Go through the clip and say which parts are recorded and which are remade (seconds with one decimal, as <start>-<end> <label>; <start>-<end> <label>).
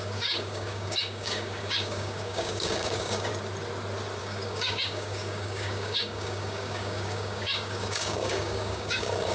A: 0.0-3.3 remade; 3.3-4.2 recorded; 4.2-9.3 remade